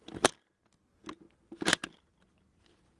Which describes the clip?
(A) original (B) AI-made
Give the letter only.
A